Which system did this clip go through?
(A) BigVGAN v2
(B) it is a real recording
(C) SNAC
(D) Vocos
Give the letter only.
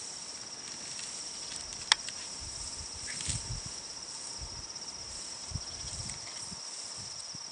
B